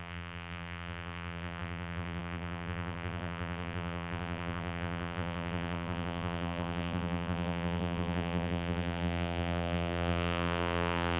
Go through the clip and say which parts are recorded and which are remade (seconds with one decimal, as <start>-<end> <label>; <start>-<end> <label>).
0.0-11.2 remade